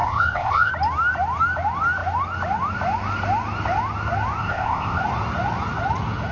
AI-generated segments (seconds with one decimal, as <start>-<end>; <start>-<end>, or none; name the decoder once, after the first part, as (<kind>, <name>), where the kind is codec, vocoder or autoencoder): 0.0-0.7 (codec, ZipCodec); 4.4-5.0

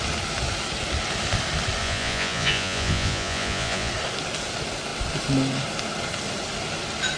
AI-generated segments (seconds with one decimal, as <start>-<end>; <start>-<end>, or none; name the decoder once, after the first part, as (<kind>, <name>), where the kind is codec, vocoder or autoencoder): 1.8-3.9 (vocoder, Vocos)

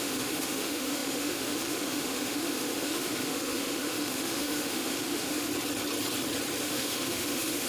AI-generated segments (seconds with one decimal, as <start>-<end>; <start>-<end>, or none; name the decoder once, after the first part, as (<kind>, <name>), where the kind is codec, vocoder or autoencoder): 0.0-5.5 (autoencoder, DAC-VAE); 6.6-7.7

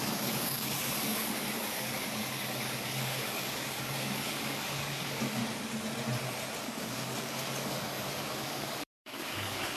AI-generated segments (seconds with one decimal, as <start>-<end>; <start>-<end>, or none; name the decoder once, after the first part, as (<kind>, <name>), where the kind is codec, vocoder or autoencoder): 0.0-5.4 (codec, DAC); 6.6-9.8

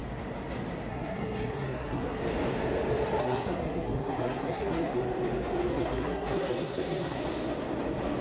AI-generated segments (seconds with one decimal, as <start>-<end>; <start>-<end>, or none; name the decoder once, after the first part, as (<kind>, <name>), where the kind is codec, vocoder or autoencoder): 0.9-2.2 (codec, SNAC); 3.2-5.0; 5.7-7.2

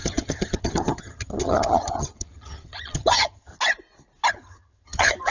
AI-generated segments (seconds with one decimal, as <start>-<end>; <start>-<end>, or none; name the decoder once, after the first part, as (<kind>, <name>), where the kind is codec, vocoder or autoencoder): 0.0-3.5 (vocoder, HiFi-GAN); 4.3-5.3

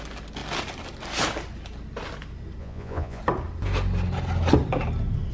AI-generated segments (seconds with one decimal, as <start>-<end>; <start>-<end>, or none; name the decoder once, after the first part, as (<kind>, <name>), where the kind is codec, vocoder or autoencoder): 2.6-3.2 (vocoder, Vocos)